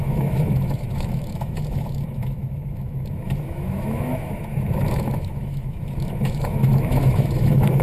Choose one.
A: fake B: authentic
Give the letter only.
A